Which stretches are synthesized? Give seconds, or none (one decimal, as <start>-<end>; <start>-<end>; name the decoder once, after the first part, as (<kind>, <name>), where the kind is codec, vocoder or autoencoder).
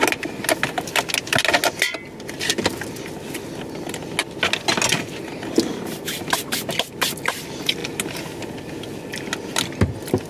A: none